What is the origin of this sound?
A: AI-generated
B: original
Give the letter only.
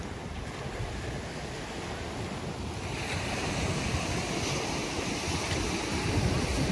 B